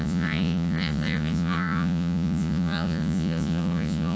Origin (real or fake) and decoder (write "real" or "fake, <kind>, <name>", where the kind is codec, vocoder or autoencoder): fake, vocoder, Vocos